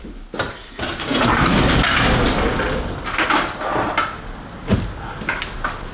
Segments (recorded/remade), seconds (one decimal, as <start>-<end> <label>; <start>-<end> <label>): 0.0-5.9 recorded